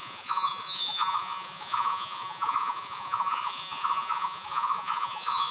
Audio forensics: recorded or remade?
remade